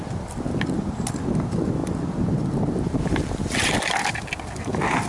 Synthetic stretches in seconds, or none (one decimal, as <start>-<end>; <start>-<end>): none